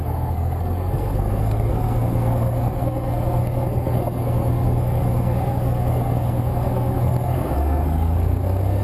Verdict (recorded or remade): remade